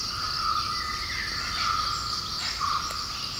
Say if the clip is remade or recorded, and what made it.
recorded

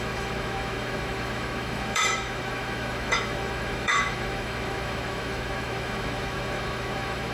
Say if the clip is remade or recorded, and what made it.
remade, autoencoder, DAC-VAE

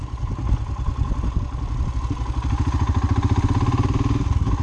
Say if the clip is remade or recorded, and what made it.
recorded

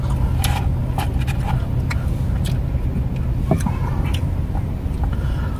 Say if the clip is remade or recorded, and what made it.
recorded